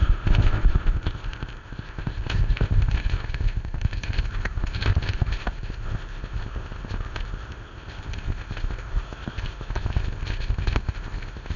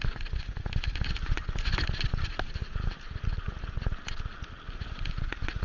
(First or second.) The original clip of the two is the second